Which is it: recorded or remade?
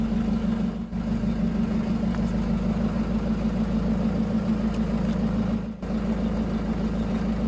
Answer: recorded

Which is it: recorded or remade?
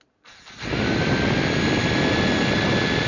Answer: recorded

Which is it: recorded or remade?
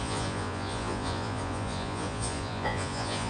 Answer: remade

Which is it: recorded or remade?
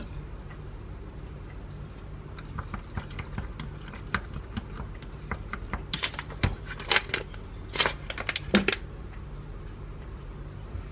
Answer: recorded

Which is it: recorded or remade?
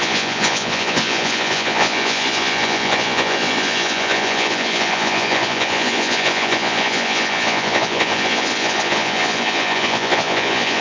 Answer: remade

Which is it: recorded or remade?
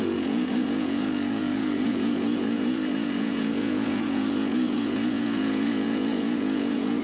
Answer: remade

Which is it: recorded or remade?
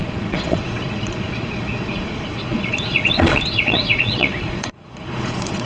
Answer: remade